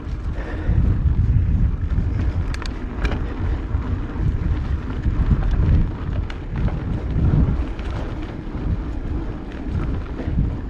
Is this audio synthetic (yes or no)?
no